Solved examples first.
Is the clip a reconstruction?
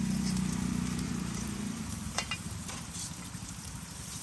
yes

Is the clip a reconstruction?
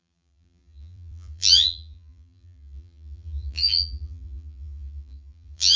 yes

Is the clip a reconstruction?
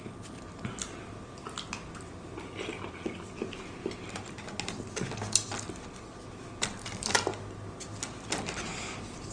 no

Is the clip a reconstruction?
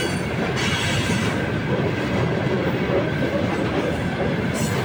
no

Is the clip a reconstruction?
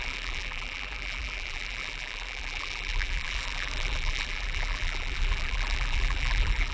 yes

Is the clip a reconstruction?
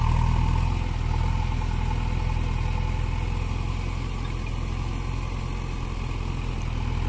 no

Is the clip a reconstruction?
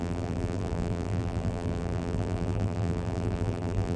yes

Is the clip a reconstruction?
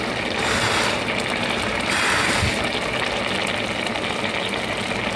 no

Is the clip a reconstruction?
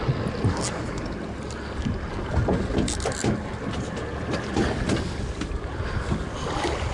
no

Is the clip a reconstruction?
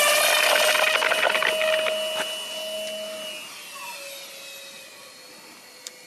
no